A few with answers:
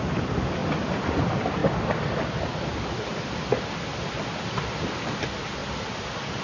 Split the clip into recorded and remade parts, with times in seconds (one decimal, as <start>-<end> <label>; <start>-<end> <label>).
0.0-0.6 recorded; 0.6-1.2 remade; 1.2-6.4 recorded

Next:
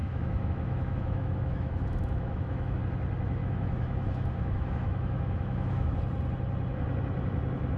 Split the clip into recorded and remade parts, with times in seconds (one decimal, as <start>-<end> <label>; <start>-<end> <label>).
0.0-2.8 remade; 2.8-3.4 recorded; 3.4-5.9 remade; 5.9-7.8 recorded

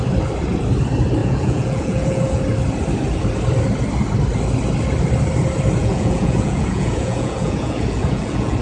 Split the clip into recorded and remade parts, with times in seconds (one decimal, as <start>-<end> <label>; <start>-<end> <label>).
0.0-1.2 recorded; 1.2-2.4 remade; 2.4-5.8 recorded; 5.8-8.6 remade